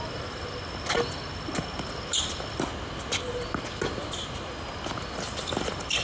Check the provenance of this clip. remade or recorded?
recorded